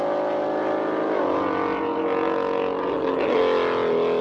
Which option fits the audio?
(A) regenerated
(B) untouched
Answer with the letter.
B